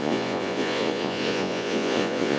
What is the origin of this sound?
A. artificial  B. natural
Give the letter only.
A